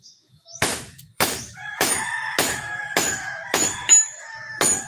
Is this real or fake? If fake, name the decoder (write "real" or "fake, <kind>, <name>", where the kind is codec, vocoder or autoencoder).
fake, autoencoder, DAC-VAE